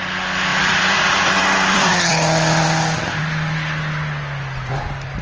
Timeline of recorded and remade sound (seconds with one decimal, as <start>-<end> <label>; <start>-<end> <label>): 0.0-0.5 recorded; 0.5-3.2 remade; 3.2-5.2 recorded